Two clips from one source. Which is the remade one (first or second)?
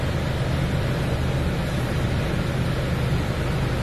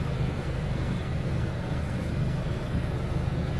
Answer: second